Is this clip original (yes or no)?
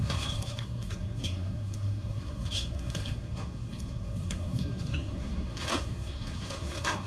no